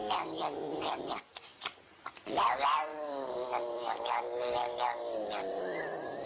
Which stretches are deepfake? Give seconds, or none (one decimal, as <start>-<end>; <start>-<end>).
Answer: 0.0-1.0; 2.9-5.0